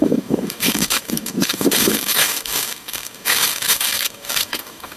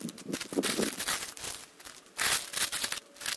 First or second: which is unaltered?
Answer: second